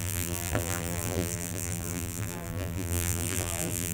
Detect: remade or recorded remade